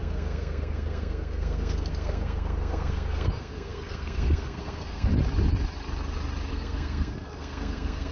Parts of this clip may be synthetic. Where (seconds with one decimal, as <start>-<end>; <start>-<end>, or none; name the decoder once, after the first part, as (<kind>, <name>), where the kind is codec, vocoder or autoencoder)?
0.0-5.1 (codec, SNAC); 6.5-8.1